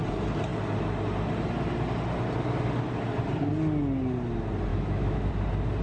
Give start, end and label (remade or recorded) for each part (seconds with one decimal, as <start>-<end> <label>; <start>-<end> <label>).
0.0-4.7 recorded; 4.7-5.3 remade; 5.3-5.8 recorded